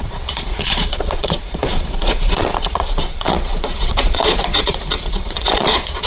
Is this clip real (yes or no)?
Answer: no